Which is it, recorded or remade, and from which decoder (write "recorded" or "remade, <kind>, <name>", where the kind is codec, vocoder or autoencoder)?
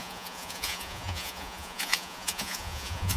remade, vocoder, Vocos